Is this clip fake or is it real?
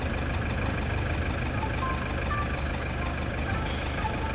real